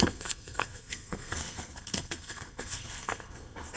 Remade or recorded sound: remade